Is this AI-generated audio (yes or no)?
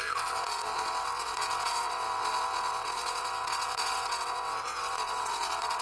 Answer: yes